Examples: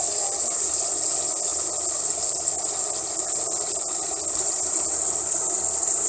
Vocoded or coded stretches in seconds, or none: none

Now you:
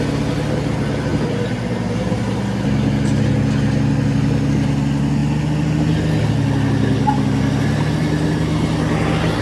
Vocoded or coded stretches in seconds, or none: none

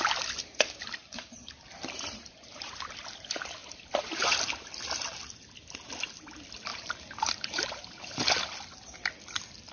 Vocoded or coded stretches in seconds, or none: 1.0-2.9; 3.6-4.2; 6.7-8.3

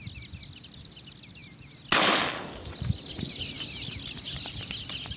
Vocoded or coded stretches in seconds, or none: none

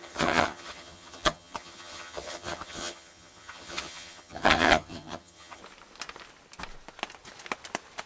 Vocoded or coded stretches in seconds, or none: 0.0-5.6